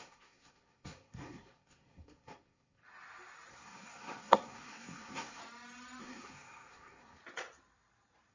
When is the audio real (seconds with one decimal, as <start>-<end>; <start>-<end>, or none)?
2.8-3.5; 5.4-6.0; 7.2-8.3